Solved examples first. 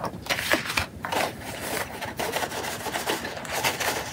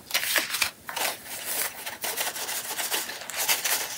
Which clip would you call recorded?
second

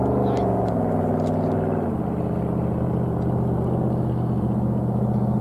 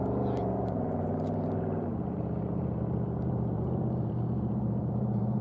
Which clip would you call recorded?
first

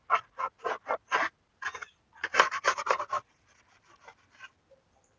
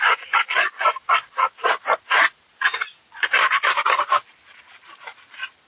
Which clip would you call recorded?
first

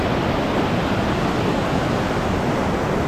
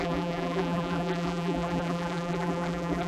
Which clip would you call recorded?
first